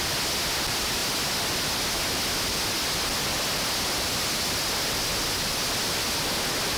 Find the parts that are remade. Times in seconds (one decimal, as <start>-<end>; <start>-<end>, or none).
none